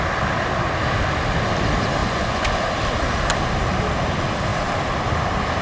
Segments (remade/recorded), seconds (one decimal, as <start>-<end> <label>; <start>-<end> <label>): 0.0-2.0 recorded; 2.0-2.5 remade; 2.5-5.6 recorded